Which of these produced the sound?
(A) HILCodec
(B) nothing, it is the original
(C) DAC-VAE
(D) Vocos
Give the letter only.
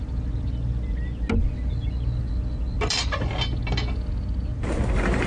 B